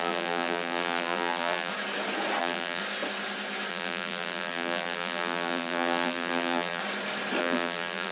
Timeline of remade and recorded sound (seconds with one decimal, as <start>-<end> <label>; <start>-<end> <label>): 0.0-1.7 remade; 1.7-2.4 recorded; 2.4-2.8 remade; 2.8-3.7 recorded; 3.7-6.8 remade; 6.8-7.4 recorded; 7.4-8.1 remade